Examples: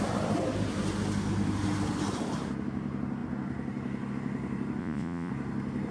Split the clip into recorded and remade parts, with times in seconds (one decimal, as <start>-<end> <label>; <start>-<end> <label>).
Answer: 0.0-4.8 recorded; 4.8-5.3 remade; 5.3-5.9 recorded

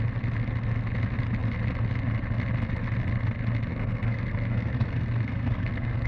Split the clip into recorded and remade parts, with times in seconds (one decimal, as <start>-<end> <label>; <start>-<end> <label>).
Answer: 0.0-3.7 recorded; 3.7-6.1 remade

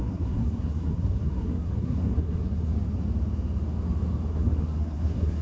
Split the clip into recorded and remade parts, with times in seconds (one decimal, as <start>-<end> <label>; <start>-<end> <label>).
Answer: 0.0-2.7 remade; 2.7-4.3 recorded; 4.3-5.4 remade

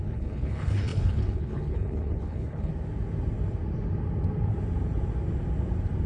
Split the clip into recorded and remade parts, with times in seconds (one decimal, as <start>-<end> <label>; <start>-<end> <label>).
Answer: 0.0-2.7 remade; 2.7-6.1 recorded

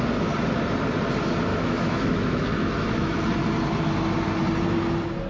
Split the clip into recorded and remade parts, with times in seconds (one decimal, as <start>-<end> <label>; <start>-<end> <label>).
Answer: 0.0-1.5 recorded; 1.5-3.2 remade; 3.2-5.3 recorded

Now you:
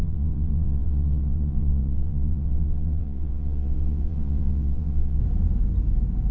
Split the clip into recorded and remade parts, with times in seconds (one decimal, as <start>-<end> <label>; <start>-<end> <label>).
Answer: 0.0-5.2 remade; 5.2-6.3 recorded

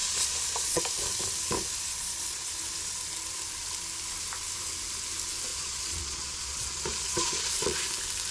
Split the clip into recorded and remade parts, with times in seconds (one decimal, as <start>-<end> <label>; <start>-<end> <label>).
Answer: 0.0-0.8 remade; 0.8-1.9 recorded; 1.9-2.5 remade; 2.5-5.5 recorded; 5.5-7.9 remade; 7.9-8.3 recorded

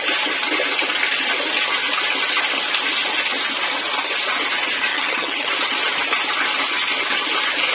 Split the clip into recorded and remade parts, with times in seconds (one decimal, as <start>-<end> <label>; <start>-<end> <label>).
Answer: 0.0-4.9 recorded; 4.9-5.5 remade; 5.5-7.7 recorded